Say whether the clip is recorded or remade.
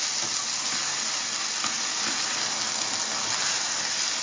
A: recorded